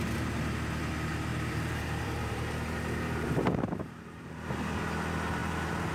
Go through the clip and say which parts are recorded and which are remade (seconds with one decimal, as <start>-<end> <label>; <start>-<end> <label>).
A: 0.0-1.3 recorded; 1.3-4.5 remade; 4.5-5.9 recorded